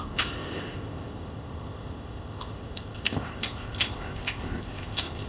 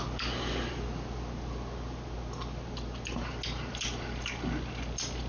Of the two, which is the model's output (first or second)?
first